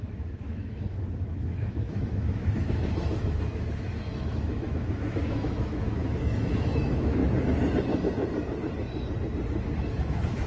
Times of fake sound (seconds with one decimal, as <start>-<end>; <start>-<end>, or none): 0.0-7.2; 9.9-10.5